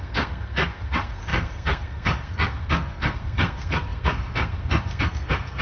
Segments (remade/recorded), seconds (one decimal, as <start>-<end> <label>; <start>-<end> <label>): 0.0-5.6 remade